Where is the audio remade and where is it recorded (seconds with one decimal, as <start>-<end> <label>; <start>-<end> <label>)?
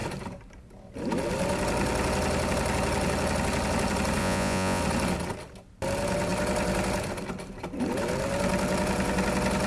0.0-4.2 recorded; 4.2-4.8 remade; 4.8-9.7 recorded